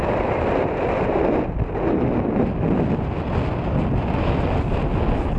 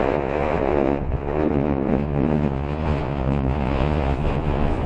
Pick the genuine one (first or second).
first